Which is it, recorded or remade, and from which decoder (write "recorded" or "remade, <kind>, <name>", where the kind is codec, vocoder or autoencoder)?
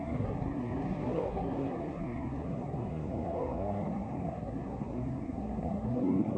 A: remade, codec, SNAC